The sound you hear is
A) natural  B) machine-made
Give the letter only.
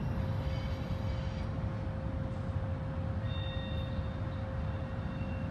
A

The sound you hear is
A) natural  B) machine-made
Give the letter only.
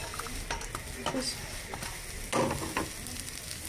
A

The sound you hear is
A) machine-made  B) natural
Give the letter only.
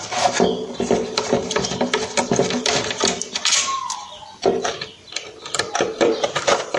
B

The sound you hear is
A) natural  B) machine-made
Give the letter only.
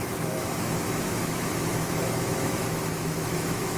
B